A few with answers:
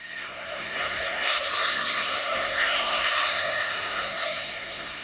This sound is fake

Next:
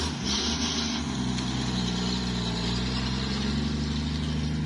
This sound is real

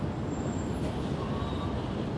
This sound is real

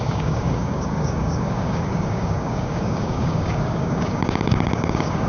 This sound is fake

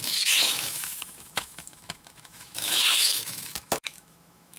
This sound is fake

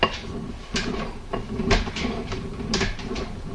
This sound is real